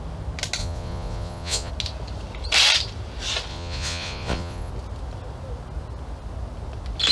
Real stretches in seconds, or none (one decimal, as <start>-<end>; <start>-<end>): 0.0-0.6; 1.7-3.5; 4.7-7.1